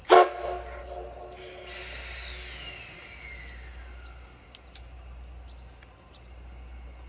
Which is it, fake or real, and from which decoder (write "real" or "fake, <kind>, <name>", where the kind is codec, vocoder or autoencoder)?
real